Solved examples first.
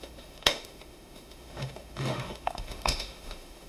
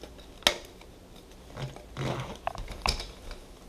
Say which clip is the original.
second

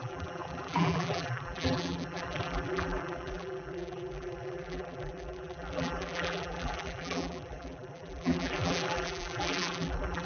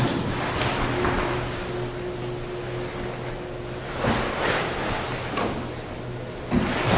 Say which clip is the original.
second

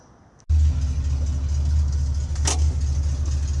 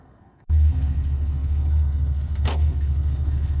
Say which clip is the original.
first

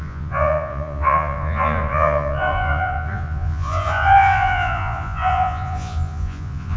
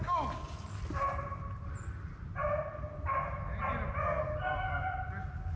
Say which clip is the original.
second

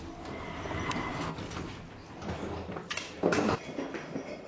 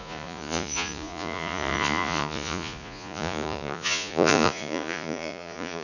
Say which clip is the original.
first